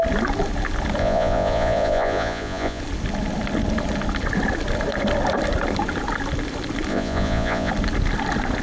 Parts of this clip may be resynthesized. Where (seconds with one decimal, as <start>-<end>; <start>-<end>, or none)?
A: 1.0-2.8; 6.9-7.7

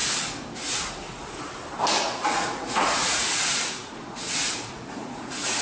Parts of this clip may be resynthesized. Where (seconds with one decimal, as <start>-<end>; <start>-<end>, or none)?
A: 1.9-5.6